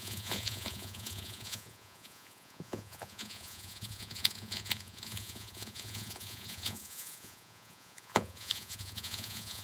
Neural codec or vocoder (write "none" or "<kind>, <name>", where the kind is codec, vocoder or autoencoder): vocoder, Vocos